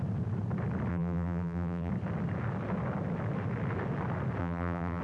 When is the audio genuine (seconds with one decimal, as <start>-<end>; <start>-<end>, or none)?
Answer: 0.0-0.9; 1.9-4.4